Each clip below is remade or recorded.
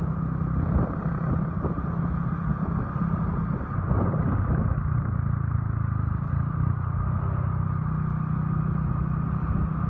recorded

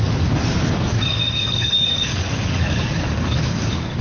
remade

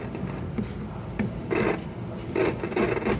recorded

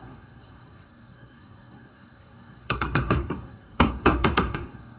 remade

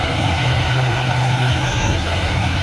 remade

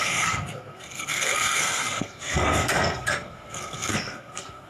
remade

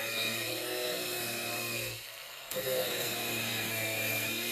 remade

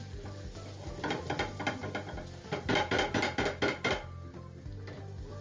recorded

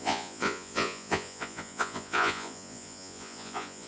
remade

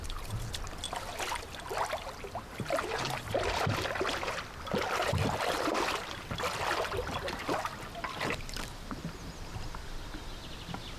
recorded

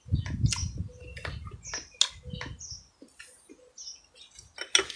recorded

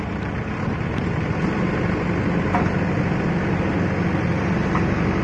recorded